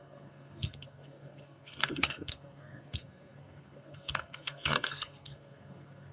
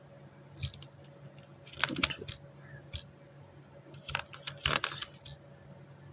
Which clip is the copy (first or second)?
first